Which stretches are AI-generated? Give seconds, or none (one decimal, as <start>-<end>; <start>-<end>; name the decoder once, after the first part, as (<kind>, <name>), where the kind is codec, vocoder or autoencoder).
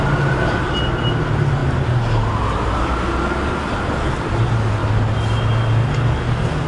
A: none